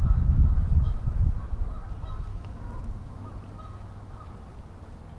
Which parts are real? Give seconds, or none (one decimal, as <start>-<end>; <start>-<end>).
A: 1.2-2.3; 3.4-5.2